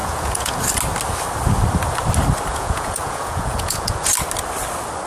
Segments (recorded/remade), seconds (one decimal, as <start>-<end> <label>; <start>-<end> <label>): 0.0-0.6 remade; 0.6-2.5 recorded; 2.5-4.1 remade; 4.1-5.1 recorded